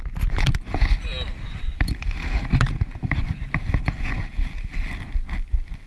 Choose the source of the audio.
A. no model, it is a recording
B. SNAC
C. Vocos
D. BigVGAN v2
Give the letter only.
A